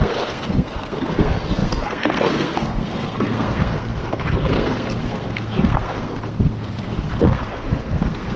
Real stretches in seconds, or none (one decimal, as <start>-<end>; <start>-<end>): none